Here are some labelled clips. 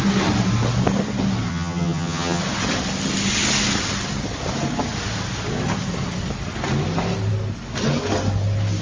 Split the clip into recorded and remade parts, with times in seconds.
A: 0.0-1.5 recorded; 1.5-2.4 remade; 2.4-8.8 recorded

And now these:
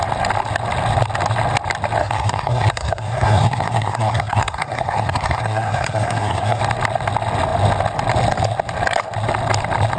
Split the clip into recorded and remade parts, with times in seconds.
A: 0.0-2.0 recorded; 2.0-6.6 remade; 6.6-10.0 recorded

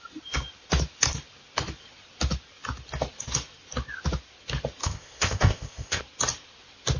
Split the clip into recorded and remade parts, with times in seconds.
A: 0.0-4.8 recorded; 4.8-6.0 remade; 6.0-7.0 recorded

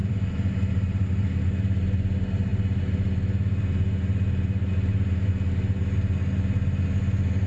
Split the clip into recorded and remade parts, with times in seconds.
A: 0.0-0.7 remade; 0.7-7.5 recorded

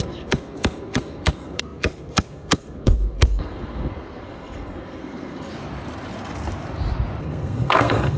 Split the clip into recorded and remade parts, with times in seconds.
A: 0.0-5.5 remade; 5.5-7.2 recorded; 7.2-8.2 remade

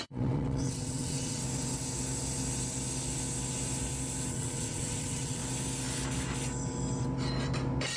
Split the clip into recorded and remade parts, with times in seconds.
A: 0.0-1.4 remade; 1.4-4.3 recorded; 4.3-5.4 remade; 5.4-8.0 recorded

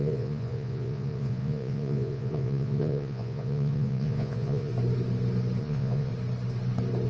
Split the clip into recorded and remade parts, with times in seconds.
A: 0.0-4.7 remade; 4.7-5.6 recorded; 5.6-6.1 remade; 6.1-7.1 recorded